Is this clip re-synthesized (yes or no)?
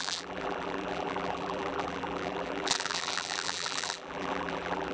yes